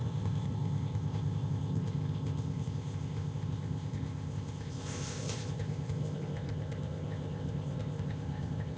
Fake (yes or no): yes